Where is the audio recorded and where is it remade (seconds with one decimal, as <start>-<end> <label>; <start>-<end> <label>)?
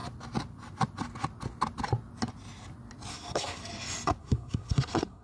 0.0-3.1 recorded; 3.1-3.6 remade; 3.6-4.2 recorded; 4.2-5.2 remade